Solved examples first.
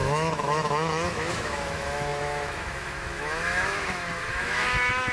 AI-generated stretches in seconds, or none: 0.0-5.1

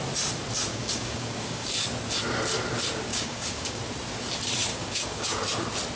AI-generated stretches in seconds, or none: 0.7-1.7; 3.1-3.8; 4.7-5.4

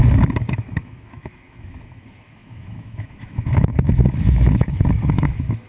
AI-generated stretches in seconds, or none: 0.5-5.7

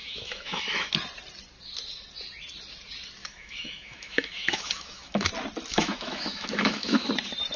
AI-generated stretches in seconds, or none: 0.0-0.9; 3.2-5.3; 5.7-7.1

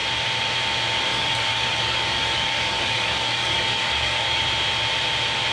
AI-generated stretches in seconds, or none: 1.1-4.4

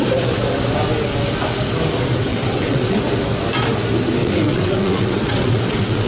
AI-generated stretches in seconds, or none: 2.3-3.0; 4.2-6.1